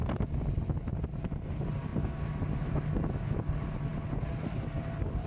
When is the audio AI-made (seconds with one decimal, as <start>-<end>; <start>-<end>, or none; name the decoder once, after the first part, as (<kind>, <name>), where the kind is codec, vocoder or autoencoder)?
0.0-1.9 (vocoder, BigVGAN v2); 2.6-3.9; 4.4-5.3